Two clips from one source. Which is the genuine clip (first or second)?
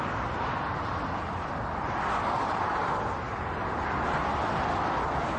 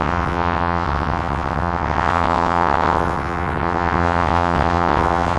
first